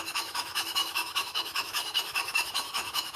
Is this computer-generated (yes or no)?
yes